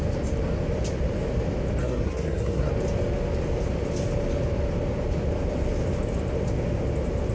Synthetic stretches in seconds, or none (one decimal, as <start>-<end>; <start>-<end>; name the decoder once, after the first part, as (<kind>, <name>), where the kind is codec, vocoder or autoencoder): 1.8-2.7 (codec, SNAC)